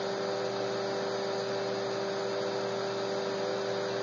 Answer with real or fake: real